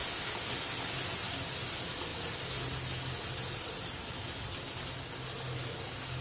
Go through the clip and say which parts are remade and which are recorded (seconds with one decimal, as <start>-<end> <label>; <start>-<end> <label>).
0.0-6.2 recorded